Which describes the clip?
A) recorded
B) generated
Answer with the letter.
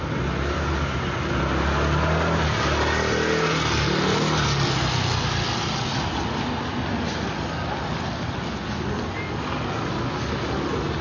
A